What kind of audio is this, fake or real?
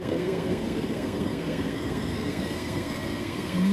fake